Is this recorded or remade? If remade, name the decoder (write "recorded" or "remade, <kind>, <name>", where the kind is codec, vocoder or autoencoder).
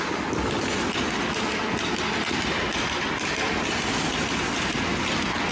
recorded